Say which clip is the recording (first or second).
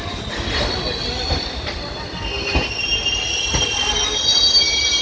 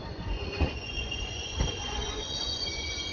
first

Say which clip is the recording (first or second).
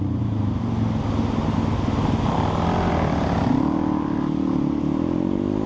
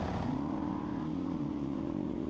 first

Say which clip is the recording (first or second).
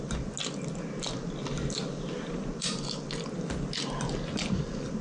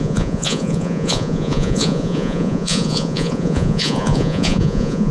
first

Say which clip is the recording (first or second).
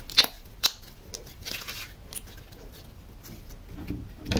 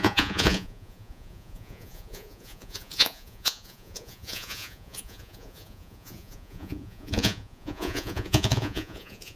first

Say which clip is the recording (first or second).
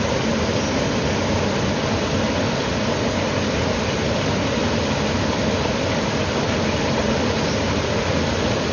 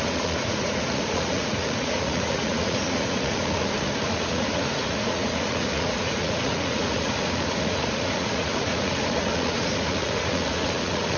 first